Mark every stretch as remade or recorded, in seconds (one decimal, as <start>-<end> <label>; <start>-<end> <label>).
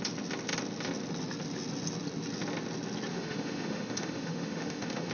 0.0-3.1 recorded; 3.1-5.1 remade